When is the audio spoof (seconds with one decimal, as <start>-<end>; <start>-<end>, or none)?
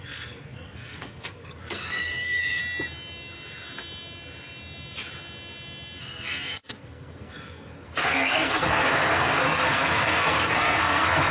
0.0-2.6; 6.0-11.3